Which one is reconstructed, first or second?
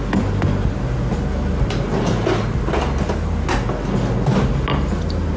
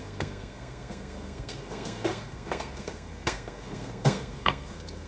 second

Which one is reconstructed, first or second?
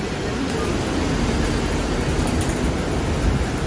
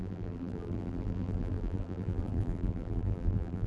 second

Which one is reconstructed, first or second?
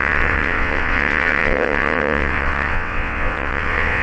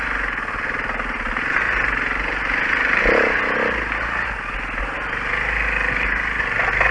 first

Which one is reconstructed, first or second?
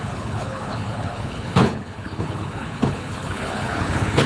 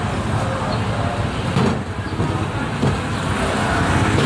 first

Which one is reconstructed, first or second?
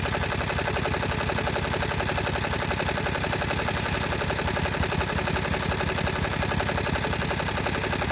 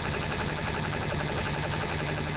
second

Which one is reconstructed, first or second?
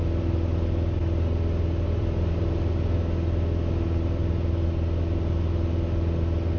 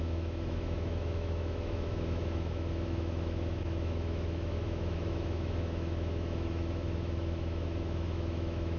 second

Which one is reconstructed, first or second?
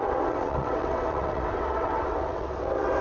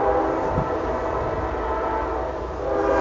first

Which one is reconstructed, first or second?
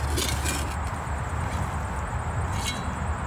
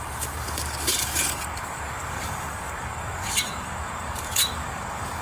second